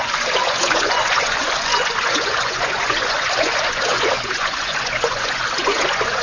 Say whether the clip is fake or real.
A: fake